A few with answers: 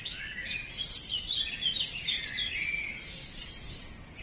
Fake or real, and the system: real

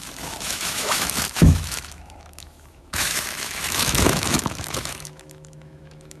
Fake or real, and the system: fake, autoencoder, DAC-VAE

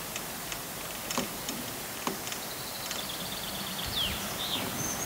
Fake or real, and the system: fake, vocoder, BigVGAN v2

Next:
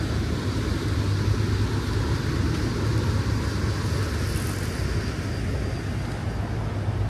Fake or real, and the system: real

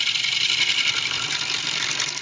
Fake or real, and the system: fake, vocoder, BigVGAN v2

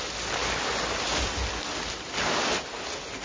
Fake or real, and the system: real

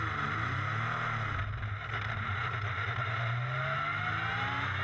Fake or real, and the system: real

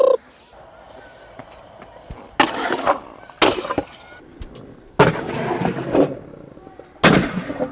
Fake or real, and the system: real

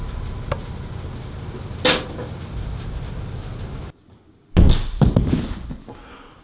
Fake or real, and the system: real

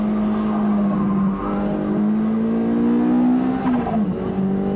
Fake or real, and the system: real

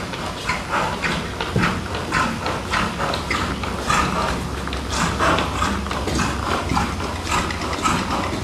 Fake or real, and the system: real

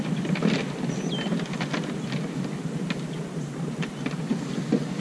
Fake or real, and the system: real